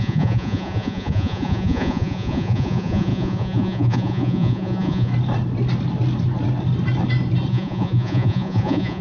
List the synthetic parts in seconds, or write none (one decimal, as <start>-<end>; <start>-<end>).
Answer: 0.0-5.1; 7.5-9.0

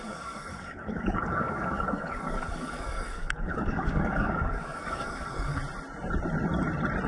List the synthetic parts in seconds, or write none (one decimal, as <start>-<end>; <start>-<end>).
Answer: 0.0-5.6